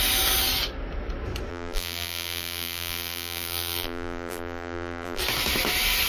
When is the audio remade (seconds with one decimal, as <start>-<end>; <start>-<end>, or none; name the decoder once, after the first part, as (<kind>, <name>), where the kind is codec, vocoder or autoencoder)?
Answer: 1.5-5.2 (vocoder, BigVGAN v2)